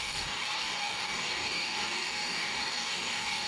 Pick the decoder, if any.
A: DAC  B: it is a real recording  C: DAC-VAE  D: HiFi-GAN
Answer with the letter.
A